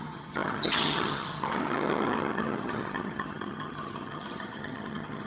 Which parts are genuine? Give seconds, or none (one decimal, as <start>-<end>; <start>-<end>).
none